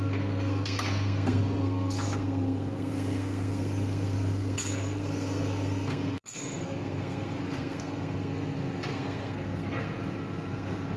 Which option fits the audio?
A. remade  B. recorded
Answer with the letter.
A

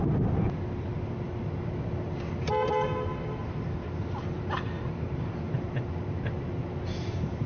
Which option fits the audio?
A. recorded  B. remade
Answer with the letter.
A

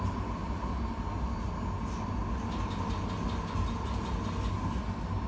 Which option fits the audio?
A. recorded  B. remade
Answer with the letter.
A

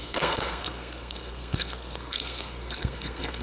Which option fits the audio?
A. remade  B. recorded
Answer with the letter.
A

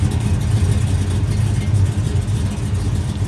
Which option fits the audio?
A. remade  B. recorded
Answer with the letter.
B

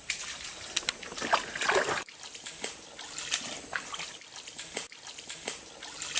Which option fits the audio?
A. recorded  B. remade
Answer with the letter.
A